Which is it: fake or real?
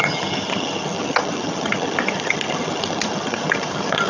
fake